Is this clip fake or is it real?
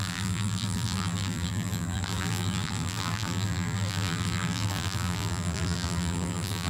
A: fake